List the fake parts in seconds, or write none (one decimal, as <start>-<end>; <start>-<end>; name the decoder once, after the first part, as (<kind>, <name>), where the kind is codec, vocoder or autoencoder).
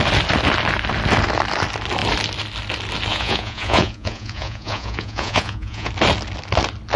3.1-5.9 (vocoder, Vocos)